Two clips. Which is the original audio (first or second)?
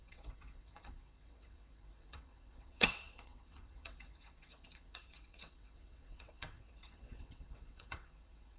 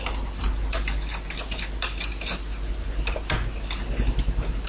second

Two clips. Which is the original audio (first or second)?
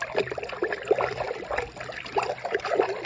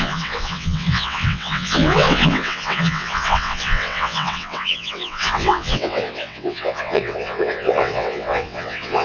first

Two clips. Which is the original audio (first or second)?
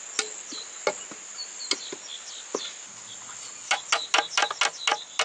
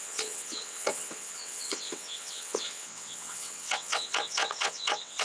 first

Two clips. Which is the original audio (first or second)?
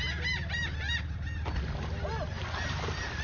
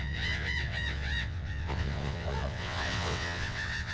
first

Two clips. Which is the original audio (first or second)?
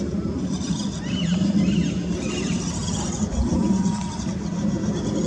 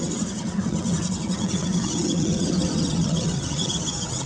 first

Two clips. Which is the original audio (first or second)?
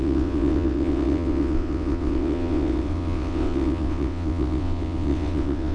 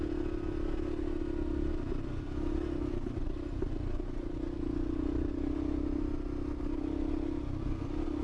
second